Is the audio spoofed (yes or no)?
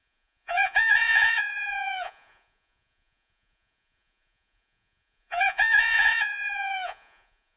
yes